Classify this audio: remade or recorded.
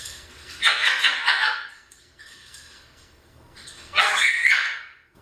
remade